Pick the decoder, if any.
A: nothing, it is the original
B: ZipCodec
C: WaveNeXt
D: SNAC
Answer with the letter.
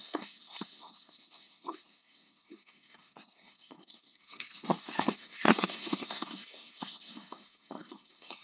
D